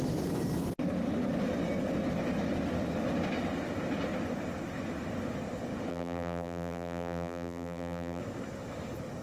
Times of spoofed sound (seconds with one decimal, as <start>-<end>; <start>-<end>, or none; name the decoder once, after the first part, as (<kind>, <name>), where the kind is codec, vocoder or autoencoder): 5.9-8.2 (vocoder, BigVGAN v2)